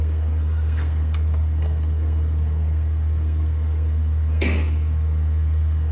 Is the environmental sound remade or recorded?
remade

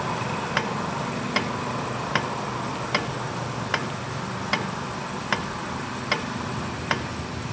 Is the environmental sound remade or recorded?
recorded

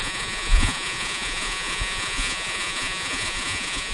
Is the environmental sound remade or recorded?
remade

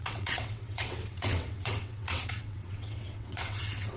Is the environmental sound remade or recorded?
remade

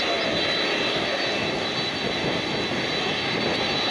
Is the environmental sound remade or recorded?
recorded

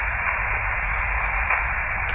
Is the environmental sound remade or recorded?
recorded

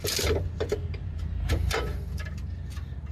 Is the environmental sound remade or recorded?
remade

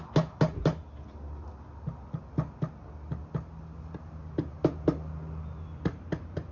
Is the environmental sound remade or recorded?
recorded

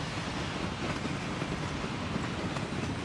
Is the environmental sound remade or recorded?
recorded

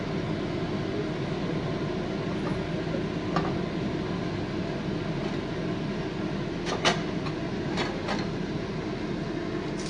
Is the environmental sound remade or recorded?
recorded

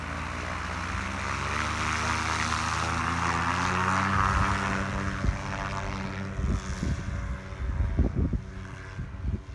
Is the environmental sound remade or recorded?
recorded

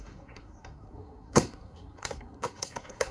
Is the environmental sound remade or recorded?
remade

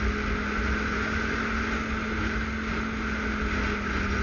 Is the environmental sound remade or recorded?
recorded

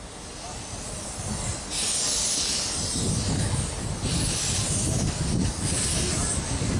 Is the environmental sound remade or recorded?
recorded